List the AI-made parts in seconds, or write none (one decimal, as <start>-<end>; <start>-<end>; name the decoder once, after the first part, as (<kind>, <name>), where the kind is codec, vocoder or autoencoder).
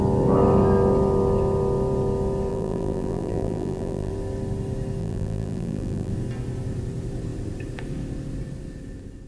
2.5-4.1 (vocoder, BigVGAN v2); 5.0-6.1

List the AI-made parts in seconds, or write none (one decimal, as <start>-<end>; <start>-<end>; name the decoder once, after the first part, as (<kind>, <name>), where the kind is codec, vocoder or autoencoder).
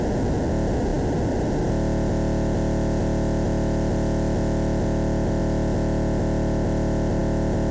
none